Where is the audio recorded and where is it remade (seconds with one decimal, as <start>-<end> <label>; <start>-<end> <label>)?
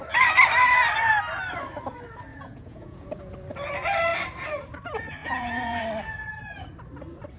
0.0-2.3 recorded; 2.3-3.3 remade; 3.3-5.2 recorded; 5.2-5.8 remade; 5.8-7.4 recorded